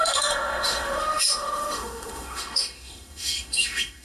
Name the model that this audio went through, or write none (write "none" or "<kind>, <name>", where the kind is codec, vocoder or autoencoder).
autoencoder, DAC-VAE